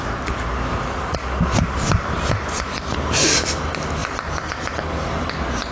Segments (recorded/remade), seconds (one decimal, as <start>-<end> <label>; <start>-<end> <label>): 0.0-5.7 recorded